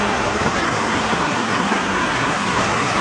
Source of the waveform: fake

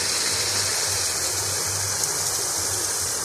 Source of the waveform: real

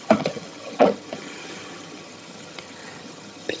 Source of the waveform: fake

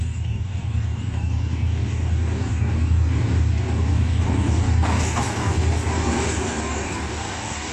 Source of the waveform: fake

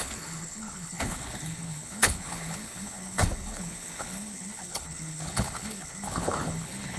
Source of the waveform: fake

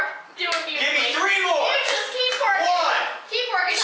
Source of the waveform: real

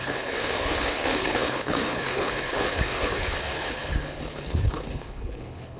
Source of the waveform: fake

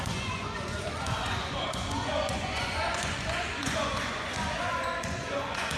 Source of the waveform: fake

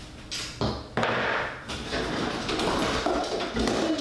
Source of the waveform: real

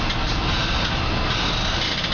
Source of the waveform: real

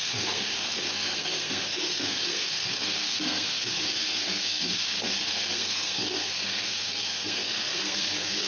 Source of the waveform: fake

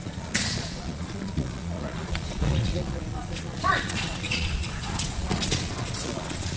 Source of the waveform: fake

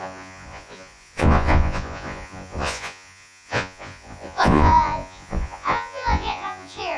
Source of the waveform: fake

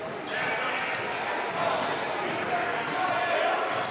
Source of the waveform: real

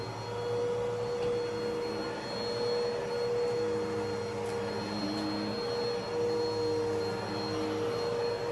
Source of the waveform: real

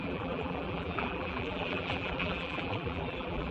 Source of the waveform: fake